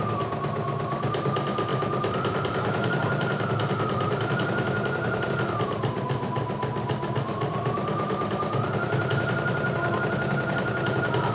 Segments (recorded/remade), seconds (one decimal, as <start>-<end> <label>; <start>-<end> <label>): 0.0-1.7 recorded; 1.7-5.3 remade; 5.3-7.3 recorded; 7.3-8.3 remade; 8.3-11.3 recorded